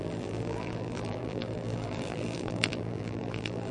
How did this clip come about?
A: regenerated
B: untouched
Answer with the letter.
A